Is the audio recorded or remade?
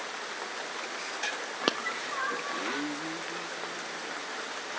recorded